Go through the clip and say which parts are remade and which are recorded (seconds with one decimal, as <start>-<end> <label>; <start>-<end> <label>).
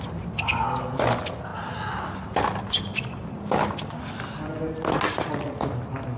0.0-6.2 recorded